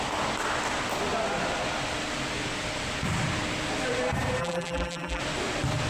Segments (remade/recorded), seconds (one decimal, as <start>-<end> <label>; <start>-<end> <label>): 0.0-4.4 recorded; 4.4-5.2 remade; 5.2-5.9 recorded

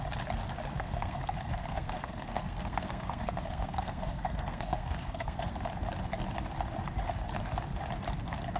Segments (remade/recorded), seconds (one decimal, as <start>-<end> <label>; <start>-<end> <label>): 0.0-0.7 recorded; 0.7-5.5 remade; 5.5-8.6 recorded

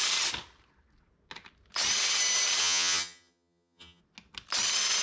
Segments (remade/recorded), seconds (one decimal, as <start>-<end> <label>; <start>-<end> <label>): 0.0-2.6 recorded; 2.6-4.0 remade; 4.0-5.0 recorded

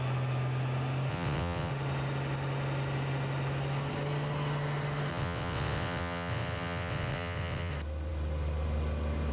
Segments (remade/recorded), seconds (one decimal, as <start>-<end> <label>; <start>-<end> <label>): 0.0-1.1 recorded; 1.1-1.7 remade; 1.7-5.1 recorded; 5.1-7.7 remade; 7.7-9.3 recorded

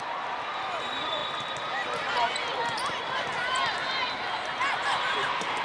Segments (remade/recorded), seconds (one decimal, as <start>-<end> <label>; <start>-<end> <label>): 0.0-5.6 recorded

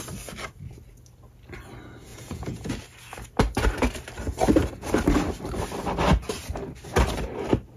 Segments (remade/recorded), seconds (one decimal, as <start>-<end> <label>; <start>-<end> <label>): 0.0-2.1 recorded; 2.1-2.7 remade; 2.7-7.8 recorded

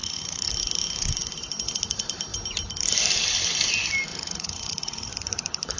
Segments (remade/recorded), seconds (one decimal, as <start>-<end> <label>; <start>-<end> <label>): 0.0-0.5 remade; 0.5-4.1 recorded; 4.1-5.1 remade; 5.1-5.8 recorded

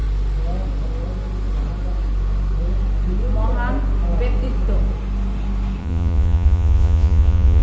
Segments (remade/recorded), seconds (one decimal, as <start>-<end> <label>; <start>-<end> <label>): 0.0-5.8 recorded; 5.8-7.6 remade